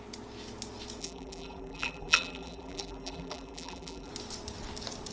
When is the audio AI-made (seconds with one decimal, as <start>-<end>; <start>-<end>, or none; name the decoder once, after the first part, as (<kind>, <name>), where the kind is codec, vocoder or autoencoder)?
1.0-4.1 (vocoder, BigVGAN v2)